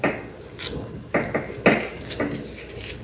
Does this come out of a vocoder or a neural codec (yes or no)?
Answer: no